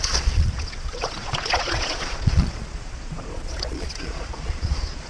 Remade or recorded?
remade